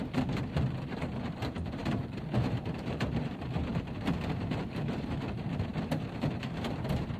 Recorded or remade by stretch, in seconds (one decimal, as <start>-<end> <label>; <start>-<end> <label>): 0.0-7.2 remade